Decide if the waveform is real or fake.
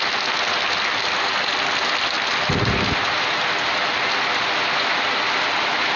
real